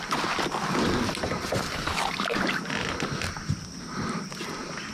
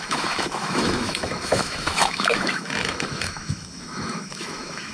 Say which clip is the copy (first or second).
second